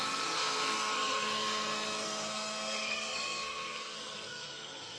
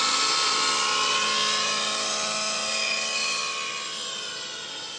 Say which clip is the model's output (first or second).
first